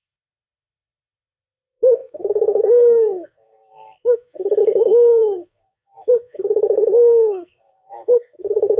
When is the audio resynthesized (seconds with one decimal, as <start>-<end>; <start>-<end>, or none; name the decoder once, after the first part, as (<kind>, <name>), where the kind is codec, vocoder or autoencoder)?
0.0-8.8 (codec, SNAC)